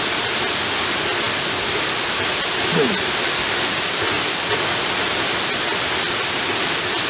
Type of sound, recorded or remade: recorded